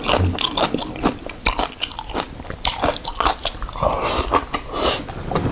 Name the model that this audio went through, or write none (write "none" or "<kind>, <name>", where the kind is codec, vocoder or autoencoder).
none